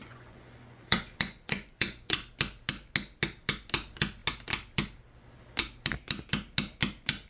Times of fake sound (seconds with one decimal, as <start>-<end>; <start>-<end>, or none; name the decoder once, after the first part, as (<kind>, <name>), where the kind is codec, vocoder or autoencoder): 0.0-2.3 (vocoder, Vocos)